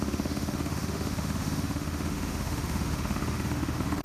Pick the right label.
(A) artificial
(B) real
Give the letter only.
A